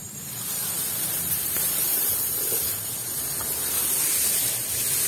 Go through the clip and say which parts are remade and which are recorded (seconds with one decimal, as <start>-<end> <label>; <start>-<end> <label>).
0.0-3.1 remade; 3.1-5.1 recorded